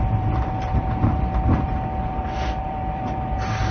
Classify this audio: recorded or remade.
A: remade